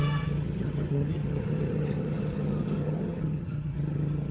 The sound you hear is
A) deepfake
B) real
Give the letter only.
A